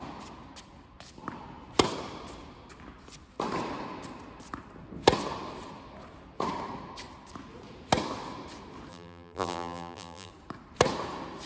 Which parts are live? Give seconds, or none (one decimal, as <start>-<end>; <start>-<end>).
0.0-8.9; 10.3-11.5